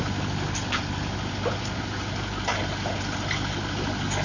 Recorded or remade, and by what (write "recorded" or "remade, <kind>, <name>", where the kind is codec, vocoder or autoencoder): recorded